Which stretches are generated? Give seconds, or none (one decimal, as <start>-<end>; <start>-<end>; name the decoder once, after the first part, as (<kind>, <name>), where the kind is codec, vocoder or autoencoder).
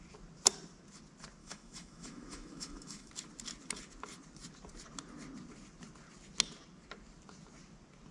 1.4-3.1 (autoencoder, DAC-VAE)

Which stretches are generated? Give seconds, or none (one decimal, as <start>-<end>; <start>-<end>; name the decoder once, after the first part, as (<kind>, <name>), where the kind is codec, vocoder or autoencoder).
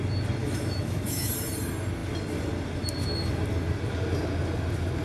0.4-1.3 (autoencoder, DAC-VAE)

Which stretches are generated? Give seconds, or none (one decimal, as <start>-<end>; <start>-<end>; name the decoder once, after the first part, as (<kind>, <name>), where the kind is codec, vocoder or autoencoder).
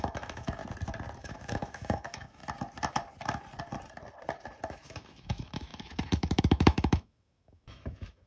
0.0-0.6 (autoencoder, DAC-VAE); 1.2-2.4; 4.7-8.3